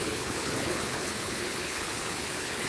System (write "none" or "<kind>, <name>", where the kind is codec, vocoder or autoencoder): codec, HILCodec